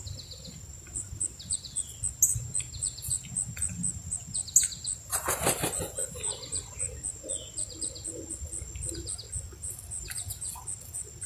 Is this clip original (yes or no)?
yes